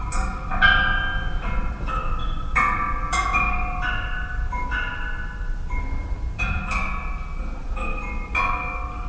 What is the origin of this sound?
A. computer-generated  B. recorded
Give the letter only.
B